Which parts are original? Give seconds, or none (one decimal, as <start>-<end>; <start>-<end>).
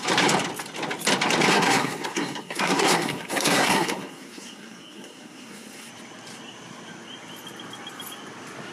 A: 0.0-1.5; 5.9-8.7